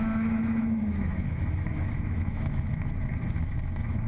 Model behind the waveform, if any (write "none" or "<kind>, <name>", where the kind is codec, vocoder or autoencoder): autoencoder, DAC-VAE